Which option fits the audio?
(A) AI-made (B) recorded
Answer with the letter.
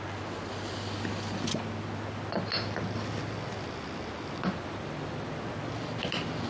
B